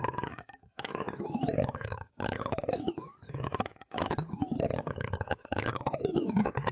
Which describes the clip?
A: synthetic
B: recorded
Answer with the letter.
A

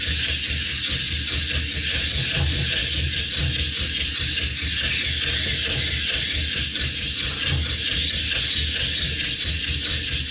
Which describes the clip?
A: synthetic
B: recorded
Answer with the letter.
B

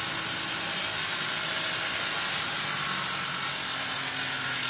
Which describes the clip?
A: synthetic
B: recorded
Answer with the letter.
B